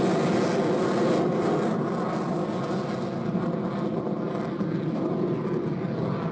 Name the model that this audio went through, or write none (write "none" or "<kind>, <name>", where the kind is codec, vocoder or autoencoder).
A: none